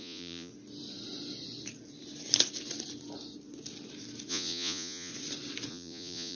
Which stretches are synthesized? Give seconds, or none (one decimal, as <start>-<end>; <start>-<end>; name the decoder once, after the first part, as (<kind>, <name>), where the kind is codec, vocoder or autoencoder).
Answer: 0.0-0.5 (vocoder, Vocos); 4.3-5.1; 5.7-6.3